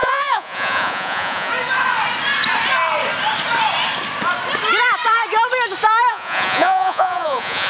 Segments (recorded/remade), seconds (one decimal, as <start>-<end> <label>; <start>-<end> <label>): 0.0-1.5 remade; 1.5-6.1 recorded; 6.1-7.7 remade